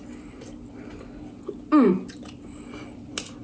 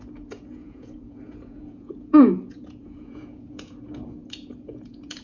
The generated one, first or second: second